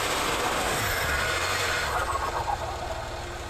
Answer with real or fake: real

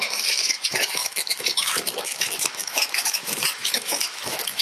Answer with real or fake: fake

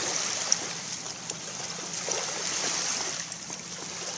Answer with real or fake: real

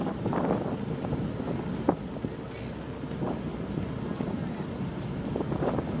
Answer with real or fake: real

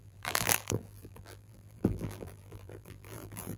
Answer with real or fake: fake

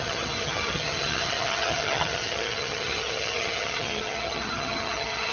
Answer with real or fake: fake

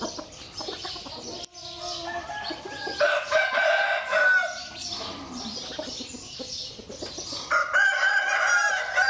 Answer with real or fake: real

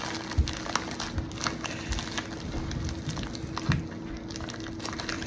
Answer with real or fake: real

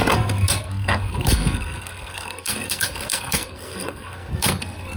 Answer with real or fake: fake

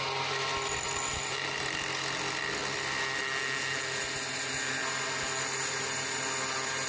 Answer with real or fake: real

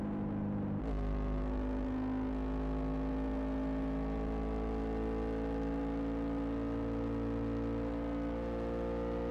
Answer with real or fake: real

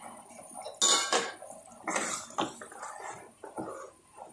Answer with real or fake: real